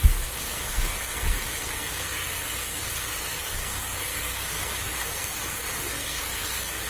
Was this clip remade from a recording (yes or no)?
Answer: yes